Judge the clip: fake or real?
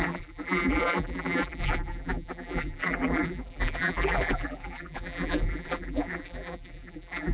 fake